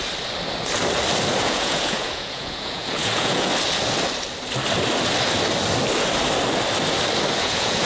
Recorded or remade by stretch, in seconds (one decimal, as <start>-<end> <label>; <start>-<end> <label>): 0.0-1.4 recorded; 1.4-3.5 remade; 3.5-7.4 recorded; 7.4-7.9 remade

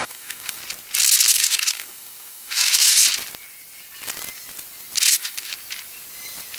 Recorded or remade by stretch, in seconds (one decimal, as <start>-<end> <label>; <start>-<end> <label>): 0.0-0.6 remade; 0.6-1.3 recorded; 1.3-3.0 remade; 3.0-5.1 recorded; 5.1-5.5 remade; 5.5-6.6 recorded

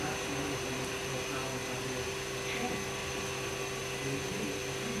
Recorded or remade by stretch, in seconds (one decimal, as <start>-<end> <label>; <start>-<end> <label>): 0.0-5.0 recorded

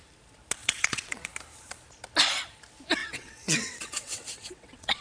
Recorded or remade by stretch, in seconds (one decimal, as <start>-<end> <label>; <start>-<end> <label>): 0.0-0.6 recorded; 0.6-1.3 remade; 1.3-3.0 recorded; 3.0-5.0 remade

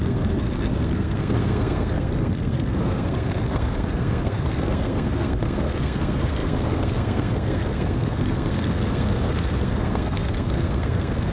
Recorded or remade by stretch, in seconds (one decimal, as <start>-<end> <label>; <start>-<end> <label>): 0.0-11.3 remade

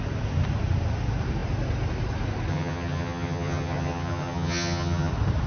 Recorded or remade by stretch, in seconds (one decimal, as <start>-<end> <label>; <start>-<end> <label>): 0.0-2.5 recorded; 2.5-5.1 remade; 5.1-5.5 recorded

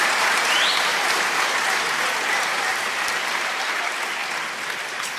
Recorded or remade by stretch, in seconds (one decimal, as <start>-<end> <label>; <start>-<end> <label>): 0.0-2.5 remade; 2.5-3.2 recorded; 3.2-4.2 remade; 4.2-4.8 recorded; 4.8-5.2 remade

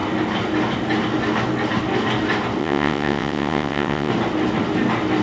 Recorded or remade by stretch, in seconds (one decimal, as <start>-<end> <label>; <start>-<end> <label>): 0.0-2.6 recorded; 2.6-4.1 remade; 4.1-5.2 recorded